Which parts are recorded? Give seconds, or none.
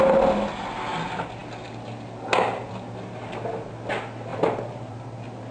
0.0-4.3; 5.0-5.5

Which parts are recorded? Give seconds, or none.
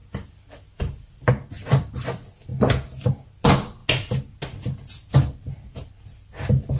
0.0-6.8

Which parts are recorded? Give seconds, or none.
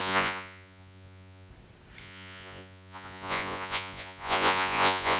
1.5-2.0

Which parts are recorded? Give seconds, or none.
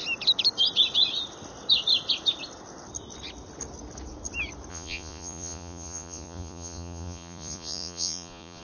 0.0-4.7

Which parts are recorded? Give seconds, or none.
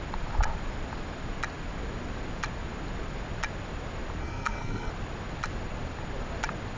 0.0-4.2; 4.9-6.8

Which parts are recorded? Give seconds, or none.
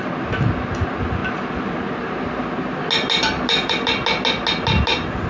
0.0-5.3